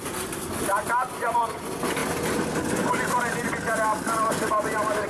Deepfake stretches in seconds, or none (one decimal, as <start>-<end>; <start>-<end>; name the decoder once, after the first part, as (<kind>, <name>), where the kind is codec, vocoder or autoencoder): none